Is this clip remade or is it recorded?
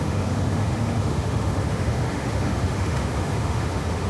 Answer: remade